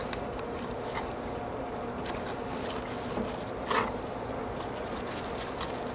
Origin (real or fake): real